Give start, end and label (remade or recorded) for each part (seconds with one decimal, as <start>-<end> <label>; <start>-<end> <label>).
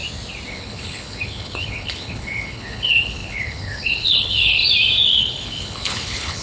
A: 0.0-0.5 recorded; 0.5-4.6 remade; 4.6-5.2 recorded; 5.2-6.4 remade